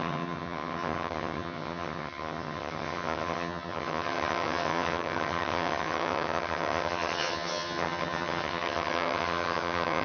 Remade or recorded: remade